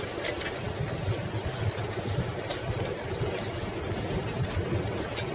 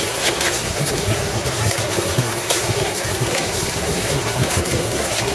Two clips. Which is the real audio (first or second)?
first